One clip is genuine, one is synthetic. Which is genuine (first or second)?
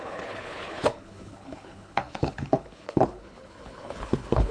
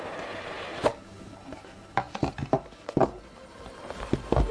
second